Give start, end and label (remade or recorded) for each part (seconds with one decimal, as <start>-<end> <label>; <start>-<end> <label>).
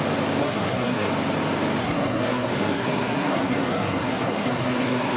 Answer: 0.0-0.4 recorded; 0.4-1.1 remade; 1.1-1.8 recorded; 1.8-5.2 remade